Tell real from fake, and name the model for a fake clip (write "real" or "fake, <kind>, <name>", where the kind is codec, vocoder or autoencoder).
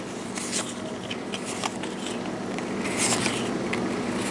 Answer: real